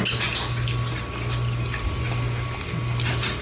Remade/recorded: recorded